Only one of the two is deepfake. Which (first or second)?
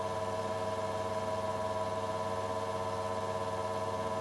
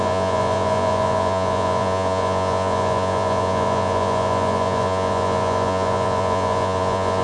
second